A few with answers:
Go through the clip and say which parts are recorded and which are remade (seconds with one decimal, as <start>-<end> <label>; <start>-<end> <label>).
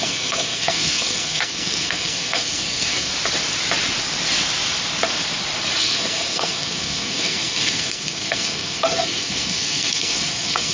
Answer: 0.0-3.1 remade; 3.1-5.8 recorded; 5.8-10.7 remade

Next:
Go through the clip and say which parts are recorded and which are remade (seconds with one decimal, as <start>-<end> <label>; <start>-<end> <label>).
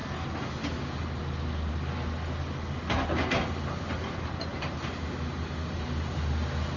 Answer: 0.0-6.8 recorded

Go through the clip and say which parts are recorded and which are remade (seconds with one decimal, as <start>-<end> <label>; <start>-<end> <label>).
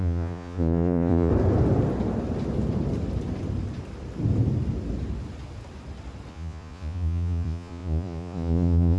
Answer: 0.0-1.3 remade; 1.3-6.3 recorded; 6.3-9.0 remade